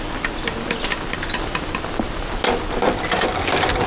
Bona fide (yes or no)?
yes